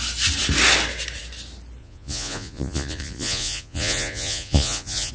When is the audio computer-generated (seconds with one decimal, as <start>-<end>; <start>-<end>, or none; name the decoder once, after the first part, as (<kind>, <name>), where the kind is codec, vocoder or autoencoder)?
1.8-5.1 (vocoder, Vocos)